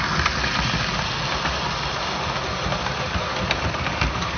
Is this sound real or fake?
real